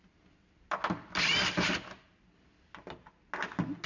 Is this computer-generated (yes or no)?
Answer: no